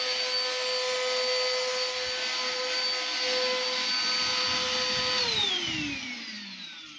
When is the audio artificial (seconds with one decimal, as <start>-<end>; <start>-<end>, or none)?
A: none